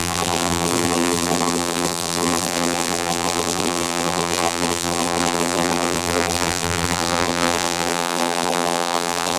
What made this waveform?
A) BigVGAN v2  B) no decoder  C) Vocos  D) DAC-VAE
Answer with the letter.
A